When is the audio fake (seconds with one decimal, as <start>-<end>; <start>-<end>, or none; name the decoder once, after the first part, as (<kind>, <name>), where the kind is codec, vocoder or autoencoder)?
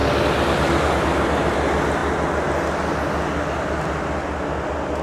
none